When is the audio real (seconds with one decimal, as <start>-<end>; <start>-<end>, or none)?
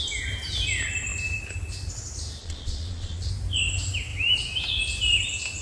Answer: 0.0-2.4; 3.3-5.6